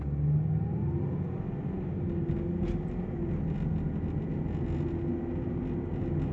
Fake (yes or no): no